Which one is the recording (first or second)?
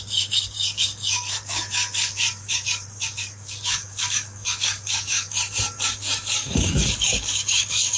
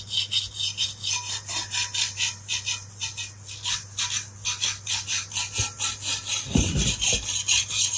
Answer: second